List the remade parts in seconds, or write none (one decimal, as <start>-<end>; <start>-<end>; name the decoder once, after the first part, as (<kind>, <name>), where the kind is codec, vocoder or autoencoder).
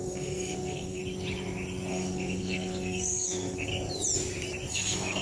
0.0-1.0 (codec, SNAC); 1.9-3.7; 4.7-5.2